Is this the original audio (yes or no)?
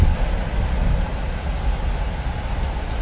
yes